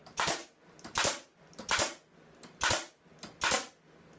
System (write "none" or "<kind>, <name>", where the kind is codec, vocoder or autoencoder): none